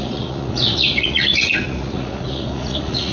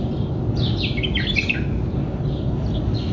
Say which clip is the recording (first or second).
second